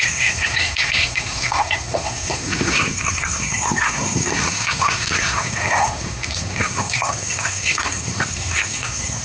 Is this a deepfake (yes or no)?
yes